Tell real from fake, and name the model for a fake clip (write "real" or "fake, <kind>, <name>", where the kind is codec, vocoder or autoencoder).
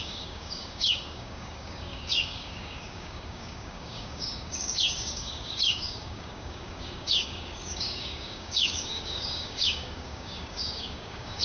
fake, codec, DAC